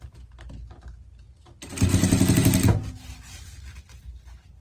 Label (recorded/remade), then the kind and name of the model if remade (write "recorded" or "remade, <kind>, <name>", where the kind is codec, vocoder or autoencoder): recorded